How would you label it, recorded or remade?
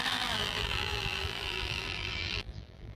remade